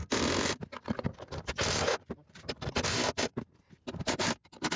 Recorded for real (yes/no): yes